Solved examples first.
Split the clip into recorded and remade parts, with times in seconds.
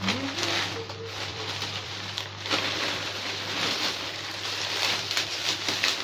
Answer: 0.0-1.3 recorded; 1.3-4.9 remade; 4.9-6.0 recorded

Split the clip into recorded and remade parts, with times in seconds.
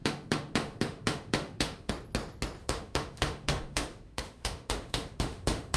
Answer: 0.0-1.9 remade; 1.9-2.6 recorded; 2.6-5.8 remade